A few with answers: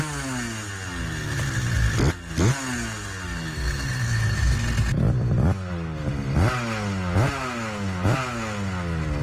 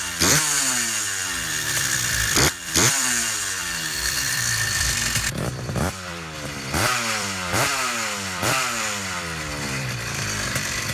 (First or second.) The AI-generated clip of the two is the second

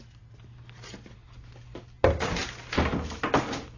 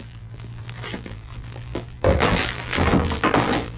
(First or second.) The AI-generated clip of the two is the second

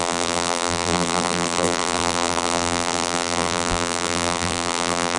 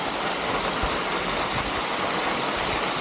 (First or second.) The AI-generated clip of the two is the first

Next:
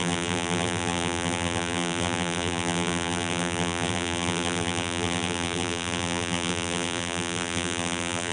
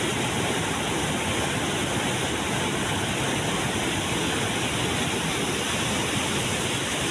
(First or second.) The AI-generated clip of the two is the first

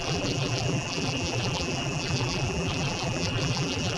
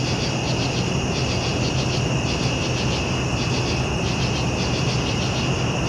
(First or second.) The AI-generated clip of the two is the first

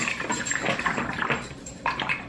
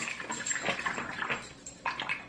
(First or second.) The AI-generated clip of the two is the first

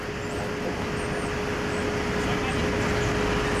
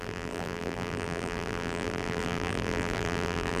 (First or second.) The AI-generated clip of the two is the second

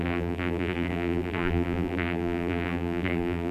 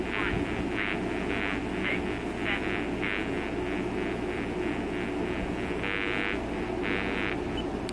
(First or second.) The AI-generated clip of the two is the first